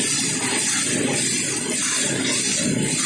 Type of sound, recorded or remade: recorded